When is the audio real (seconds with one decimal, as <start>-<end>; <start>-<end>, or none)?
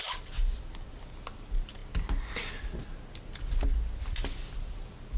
0.0-5.2